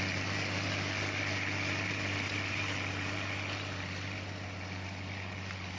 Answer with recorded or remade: recorded